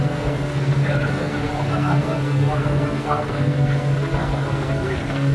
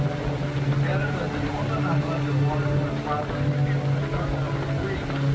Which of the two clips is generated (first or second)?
first